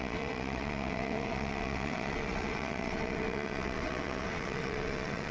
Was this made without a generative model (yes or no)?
no